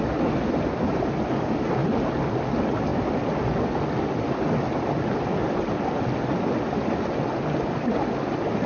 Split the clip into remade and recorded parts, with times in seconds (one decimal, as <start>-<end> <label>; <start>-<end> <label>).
0.0-8.7 recorded